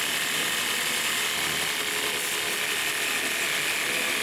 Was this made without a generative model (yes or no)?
yes